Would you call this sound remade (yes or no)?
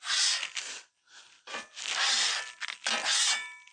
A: no